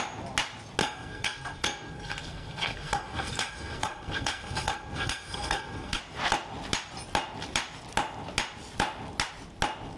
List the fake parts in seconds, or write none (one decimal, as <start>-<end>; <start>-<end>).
0.8-6.0